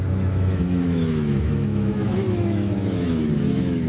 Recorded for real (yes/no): no